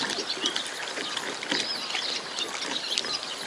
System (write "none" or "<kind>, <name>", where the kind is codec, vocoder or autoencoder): vocoder, BigVGAN v2